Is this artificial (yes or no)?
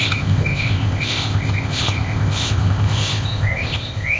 yes